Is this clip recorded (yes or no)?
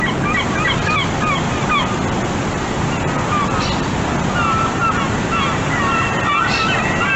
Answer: yes